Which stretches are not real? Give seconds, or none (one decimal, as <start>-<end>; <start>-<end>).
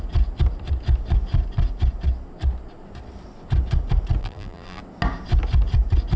4.2-4.8